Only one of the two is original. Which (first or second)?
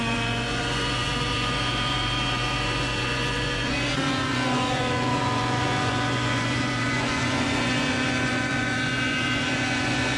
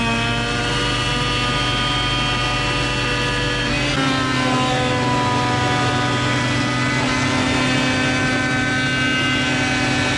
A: second